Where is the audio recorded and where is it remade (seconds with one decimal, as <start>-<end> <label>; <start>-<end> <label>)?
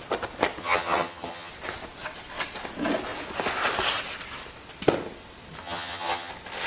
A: 0.0-0.6 recorded; 0.6-1.5 remade; 1.5-5.6 recorded; 5.6-6.3 remade; 6.3-6.7 recorded